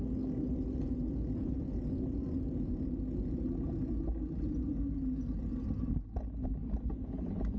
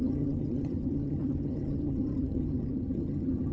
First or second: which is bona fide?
first